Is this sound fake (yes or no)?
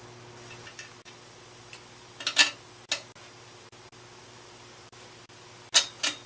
no